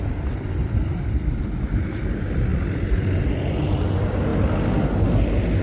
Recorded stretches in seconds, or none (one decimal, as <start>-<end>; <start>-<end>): 0.0-5.6